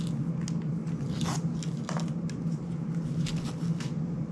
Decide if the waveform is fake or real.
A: real